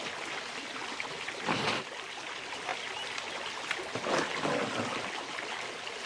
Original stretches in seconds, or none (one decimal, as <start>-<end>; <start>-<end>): 0.0-6.1